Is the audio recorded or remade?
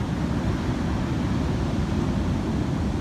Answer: recorded